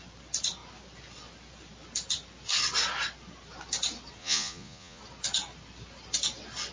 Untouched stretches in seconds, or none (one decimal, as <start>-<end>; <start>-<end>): 0.0-4.2; 5.0-6.7